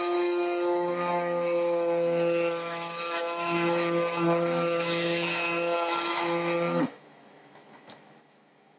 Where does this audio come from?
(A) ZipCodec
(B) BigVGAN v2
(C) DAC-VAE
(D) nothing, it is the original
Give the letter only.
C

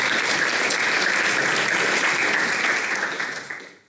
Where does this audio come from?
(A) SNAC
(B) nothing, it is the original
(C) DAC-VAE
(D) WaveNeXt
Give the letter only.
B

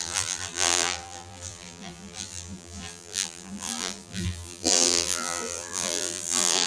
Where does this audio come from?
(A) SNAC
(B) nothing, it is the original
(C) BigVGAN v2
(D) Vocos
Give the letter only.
C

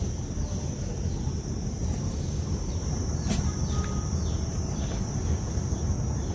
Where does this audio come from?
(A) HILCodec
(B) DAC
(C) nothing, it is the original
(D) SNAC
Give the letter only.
C